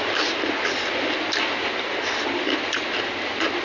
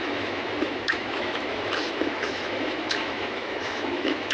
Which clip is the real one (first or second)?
first